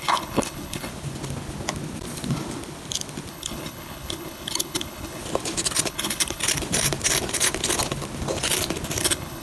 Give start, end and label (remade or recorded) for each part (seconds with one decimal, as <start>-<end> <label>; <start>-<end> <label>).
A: 0.0-0.9 remade; 0.9-3.3 recorded; 3.3-5.2 remade; 5.2-5.9 recorded; 5.9-6.4 remade; 6.4-9.0 recorded; 9.0-9.4 remade